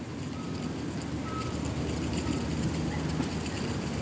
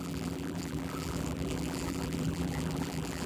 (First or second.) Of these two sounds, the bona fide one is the first